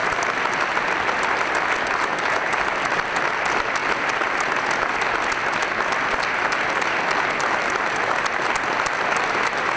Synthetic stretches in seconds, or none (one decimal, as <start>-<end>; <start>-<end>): none